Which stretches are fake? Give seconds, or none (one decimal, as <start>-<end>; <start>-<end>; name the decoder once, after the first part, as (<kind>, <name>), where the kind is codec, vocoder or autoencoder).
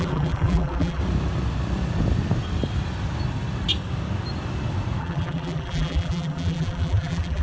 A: 0.0-1.0 (vocoder, BigVGAN v2); 5.0-7.4